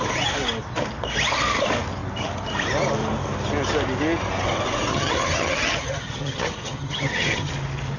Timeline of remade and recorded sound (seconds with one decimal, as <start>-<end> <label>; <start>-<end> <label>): 0.0-4.9 recorded; 4.9-7.5 remade; 7.5-8.0 recorded